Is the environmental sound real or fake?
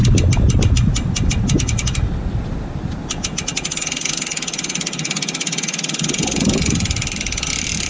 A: real